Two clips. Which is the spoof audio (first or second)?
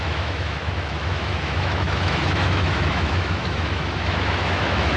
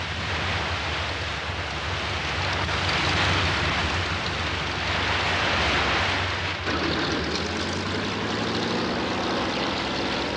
first